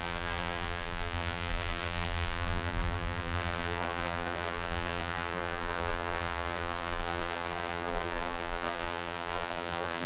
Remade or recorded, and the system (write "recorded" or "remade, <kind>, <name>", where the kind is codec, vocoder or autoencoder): remade, vocoder, BigVGAN v2